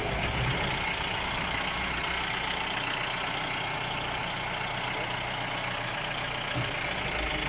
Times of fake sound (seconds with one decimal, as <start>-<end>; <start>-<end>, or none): none